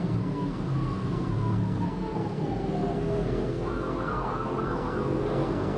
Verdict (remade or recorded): remade